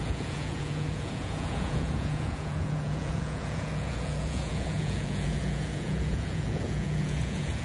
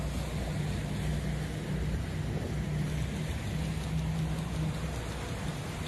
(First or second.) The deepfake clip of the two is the first